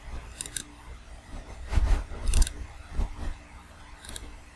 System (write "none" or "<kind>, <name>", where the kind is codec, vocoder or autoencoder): none